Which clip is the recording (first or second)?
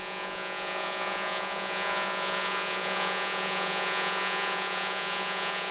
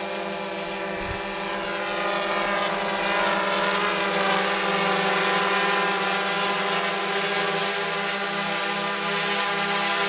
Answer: second